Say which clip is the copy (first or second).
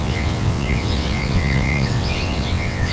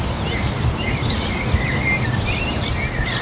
first